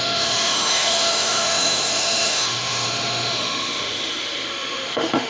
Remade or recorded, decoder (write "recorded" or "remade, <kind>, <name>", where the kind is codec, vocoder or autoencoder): remade, autoencoder, DAC-VAE